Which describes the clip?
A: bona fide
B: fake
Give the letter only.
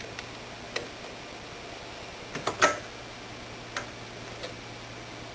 A